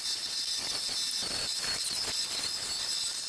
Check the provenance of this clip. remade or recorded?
recorded